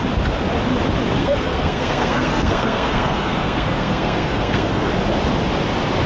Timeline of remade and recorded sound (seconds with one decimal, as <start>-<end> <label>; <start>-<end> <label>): 0.0-1.2 recorded; 1.2-4.9 remade; 4.9-6.1 recorded